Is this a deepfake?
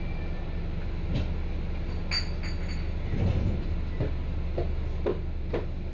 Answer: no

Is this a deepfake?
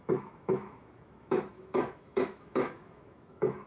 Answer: yes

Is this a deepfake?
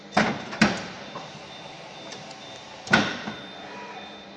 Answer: yes